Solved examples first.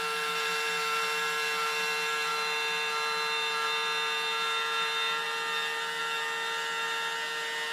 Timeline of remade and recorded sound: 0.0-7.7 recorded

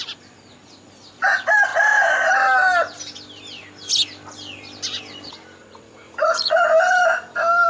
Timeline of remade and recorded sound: 0.0-5.6 recorded; 5.6-6.6 remade; 6.6-7.7 recorded

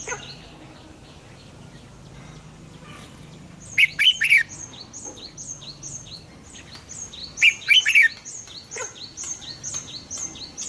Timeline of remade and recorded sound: 0.0-10.7 recorded